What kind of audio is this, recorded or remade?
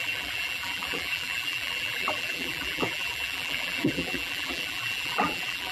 remade